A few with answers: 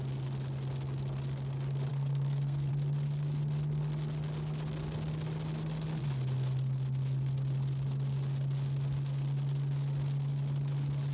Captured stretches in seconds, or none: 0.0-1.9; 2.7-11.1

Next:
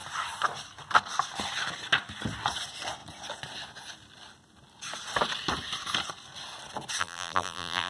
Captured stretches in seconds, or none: 0.0-7.0

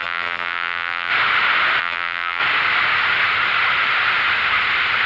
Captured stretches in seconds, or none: 1.1-1.8; 2.4-5.1

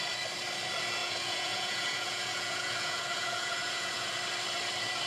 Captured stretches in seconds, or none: 0.0-1.0; 4.1-5.1

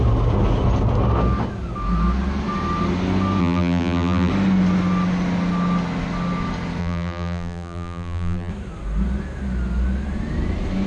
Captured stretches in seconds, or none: 0.0-3.4; 4.3-6.8; 8.5-10.9

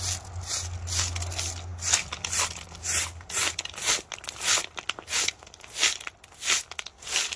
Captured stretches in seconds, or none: 0.0-7.4